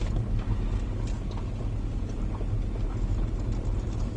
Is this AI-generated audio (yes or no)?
no